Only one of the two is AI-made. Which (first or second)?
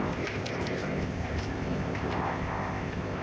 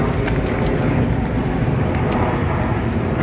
first